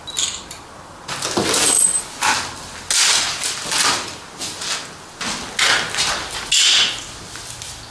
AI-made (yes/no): no